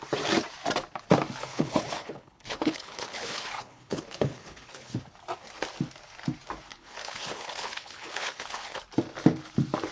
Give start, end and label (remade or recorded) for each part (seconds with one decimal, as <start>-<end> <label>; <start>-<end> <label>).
0.0-1.5 recorded; 1.5-5.0 remade; 5.0-6.7 recorded; 6.7-8.8 remade; 8.8-9.9 recorded